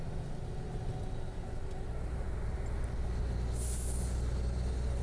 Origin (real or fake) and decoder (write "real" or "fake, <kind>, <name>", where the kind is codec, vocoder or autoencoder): real